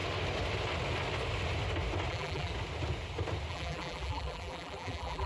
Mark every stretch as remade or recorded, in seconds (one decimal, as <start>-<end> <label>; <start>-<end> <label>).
0.0-2.1 recorded; 2.1-2.5 remade; 2.5-3.5 recorded; 3.5-5.3 remade